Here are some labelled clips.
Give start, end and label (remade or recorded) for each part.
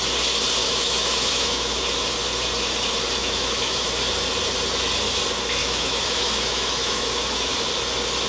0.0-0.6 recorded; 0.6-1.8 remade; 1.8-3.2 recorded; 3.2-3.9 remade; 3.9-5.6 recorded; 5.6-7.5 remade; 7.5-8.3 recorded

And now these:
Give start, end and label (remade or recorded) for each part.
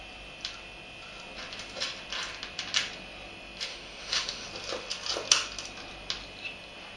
0.0-3.7 recorded; 3.7-4.5 remade; 4.5-7.0 recorded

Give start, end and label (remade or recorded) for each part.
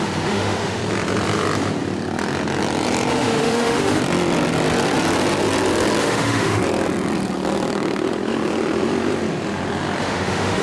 0.0-0.8 remade; 0.8-3.1 recorded; 3.1-4.0 remade; 4.0-6.0 recorded; 6.0-6.6 remade; 6.6-10.0 recorded; 10.0-10.6 remade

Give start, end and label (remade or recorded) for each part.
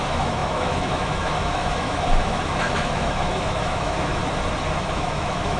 0.0-4.2 remade; 4.2-4.8 recorded; 4.8-5.6 remade